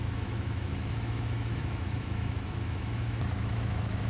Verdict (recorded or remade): remade